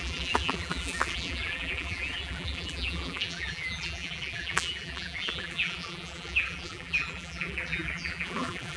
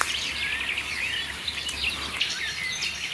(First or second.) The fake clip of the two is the first